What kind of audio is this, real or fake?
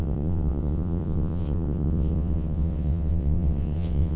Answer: fake